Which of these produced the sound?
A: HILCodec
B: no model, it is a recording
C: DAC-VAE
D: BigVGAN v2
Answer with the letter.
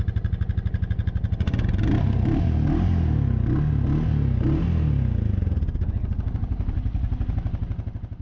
B